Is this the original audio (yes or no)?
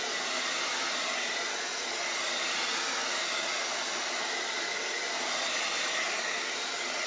yes